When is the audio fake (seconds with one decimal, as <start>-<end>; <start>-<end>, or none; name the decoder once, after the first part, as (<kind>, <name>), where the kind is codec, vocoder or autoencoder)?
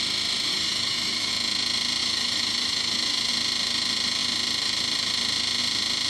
0.5-1.3 (autoencoder, DAC-VAE); 2.0-3.3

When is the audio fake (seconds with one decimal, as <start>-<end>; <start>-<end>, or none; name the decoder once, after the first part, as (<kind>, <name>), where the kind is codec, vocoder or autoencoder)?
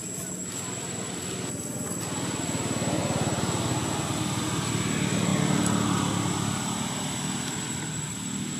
none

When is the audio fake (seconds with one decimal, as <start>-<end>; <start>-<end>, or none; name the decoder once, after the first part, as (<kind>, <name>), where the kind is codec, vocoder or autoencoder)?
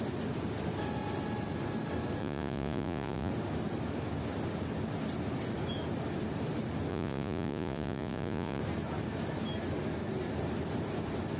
2.2-3.3 (vocoder, Vocos); 6.9-8.6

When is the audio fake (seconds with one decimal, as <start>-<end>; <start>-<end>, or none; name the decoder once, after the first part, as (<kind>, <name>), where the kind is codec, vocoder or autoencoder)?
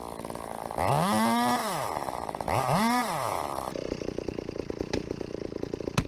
1.6-5.3 (vocoder, BigVGAN v2)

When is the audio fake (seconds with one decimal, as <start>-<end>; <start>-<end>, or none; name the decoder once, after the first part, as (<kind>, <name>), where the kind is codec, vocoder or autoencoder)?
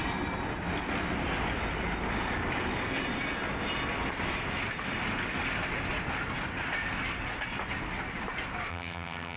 8.7-9.4 (vocoder, HiFi-GAN)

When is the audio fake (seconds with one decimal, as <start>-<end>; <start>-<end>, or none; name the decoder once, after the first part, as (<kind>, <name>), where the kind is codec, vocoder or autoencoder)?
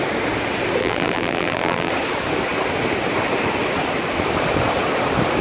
0.8-1.9 (vocoder, BigVGAN v2)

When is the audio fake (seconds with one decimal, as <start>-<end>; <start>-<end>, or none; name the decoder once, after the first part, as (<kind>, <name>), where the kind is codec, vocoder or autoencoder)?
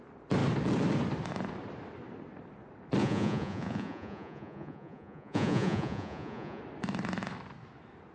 3.0-6.6 (vocoder, Vocos)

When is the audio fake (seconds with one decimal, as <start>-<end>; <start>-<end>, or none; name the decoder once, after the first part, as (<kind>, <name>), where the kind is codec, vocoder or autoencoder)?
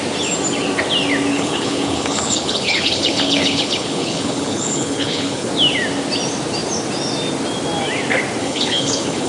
1.3-5.5 (codec, HILCodec); 8.4-9.3